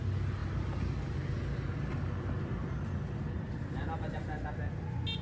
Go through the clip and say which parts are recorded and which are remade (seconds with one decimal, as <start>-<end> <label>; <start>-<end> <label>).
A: 0.0-5.2 recorded